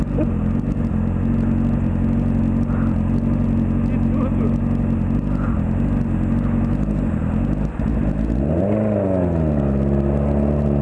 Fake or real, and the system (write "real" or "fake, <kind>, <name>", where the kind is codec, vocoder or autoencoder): real